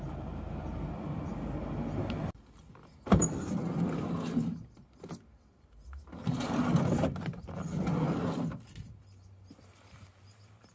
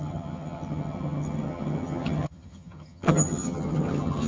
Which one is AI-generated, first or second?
second